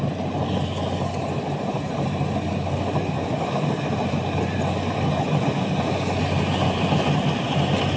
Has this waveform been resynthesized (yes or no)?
no